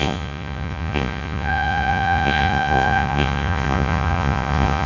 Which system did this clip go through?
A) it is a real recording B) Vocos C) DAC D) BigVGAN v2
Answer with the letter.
B